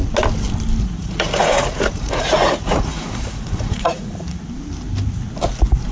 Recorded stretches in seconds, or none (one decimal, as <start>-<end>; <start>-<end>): 0.0-0.8; 4.4-5.9